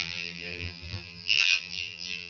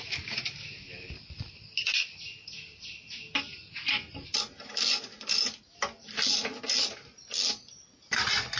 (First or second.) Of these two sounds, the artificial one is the first